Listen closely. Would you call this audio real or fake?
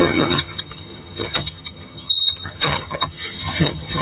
fake